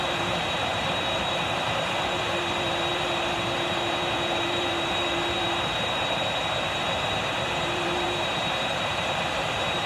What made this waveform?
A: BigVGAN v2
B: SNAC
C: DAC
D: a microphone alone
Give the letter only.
A